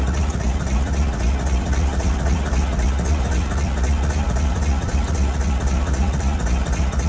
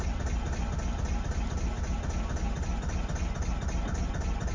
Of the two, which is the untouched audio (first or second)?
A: second